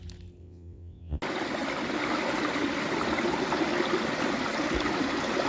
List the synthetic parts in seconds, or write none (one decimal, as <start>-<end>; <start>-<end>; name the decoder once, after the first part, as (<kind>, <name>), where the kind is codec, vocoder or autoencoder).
0.4-1.2 (vocoder, WaveNeXt)